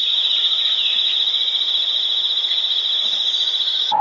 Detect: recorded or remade remade